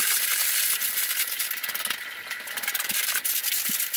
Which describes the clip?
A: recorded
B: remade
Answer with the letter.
B